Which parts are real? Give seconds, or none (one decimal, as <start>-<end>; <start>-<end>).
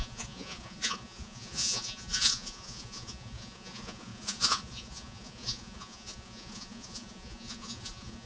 none